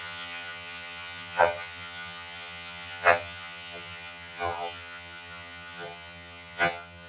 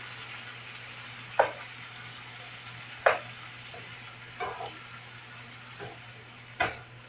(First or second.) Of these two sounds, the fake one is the first